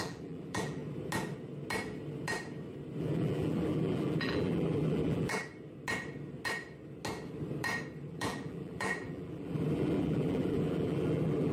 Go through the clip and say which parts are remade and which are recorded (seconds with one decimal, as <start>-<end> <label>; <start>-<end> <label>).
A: 0.0-0.8 remade; 0.8-3.0 recorded; 3.0-5.5 remade; 5.5-8.1 recorded; 8.1-11.5 remade